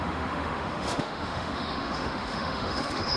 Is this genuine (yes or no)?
no